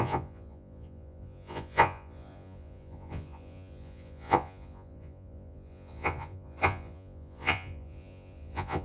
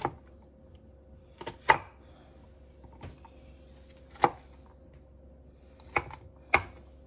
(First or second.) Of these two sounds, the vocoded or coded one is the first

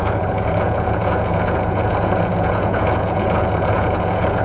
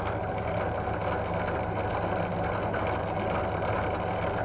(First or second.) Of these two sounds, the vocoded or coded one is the first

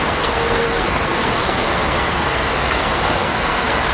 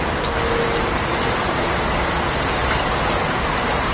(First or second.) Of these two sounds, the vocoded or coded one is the first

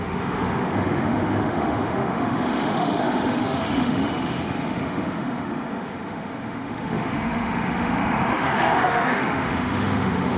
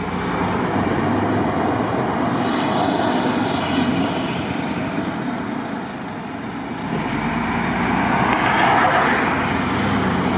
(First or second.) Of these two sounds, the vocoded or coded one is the first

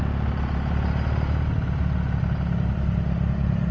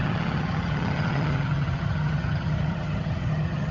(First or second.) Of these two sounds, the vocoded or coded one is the second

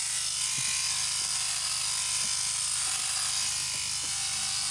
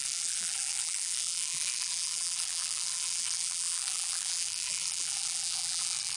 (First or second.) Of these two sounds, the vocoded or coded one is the second